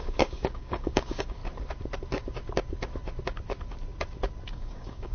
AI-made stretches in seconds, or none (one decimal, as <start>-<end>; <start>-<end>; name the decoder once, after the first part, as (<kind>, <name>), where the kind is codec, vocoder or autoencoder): 0.0-1.4 (codec, DAC); 4.5-5.1